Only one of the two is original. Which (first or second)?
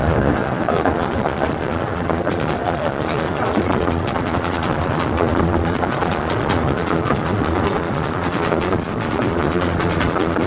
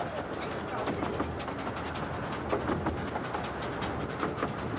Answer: second